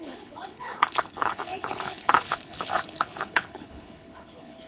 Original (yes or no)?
no